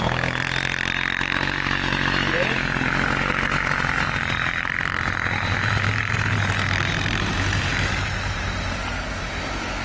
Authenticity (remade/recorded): remade